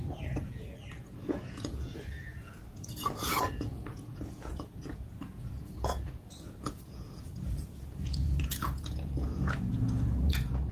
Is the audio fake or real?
fake